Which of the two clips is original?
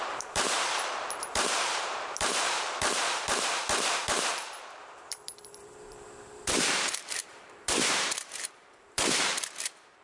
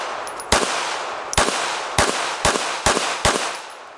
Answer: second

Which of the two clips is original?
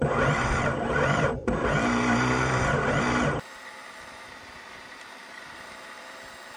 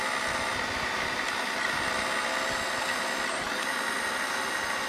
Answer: second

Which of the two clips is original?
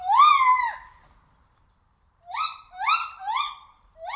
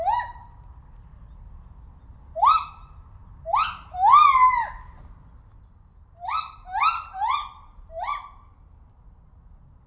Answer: second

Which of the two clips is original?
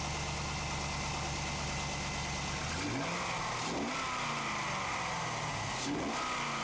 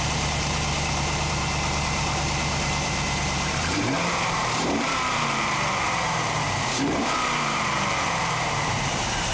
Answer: first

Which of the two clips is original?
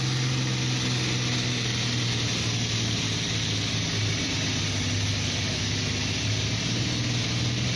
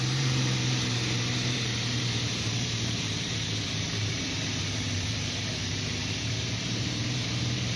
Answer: first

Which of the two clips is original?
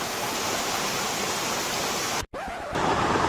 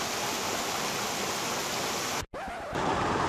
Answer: second